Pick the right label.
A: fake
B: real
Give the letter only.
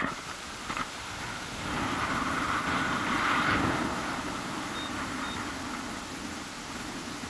B